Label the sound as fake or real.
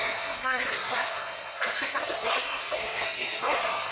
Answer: fake